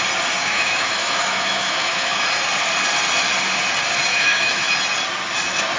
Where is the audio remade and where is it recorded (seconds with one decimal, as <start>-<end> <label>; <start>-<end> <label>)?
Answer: 0.0-0.4 recorded; 0.4-2.2 remade; 2.2-4.1 recorded; 4.1-4.7 remade; 4.7-5.8 recorded